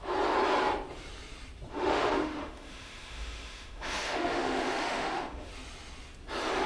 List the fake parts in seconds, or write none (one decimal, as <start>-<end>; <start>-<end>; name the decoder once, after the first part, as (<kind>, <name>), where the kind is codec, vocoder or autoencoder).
1.7-5.5 (autoencoder, DAC-VAE)